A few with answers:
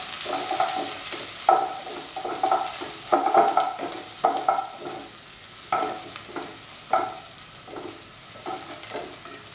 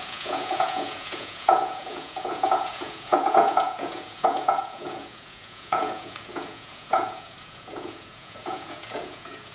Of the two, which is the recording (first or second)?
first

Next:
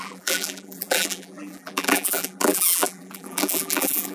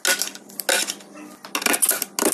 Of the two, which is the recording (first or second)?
second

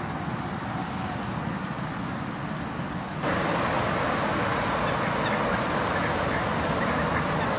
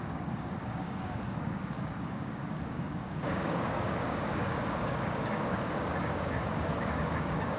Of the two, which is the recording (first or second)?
first